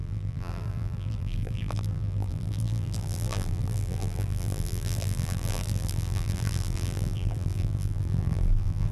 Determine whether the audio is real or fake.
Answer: fake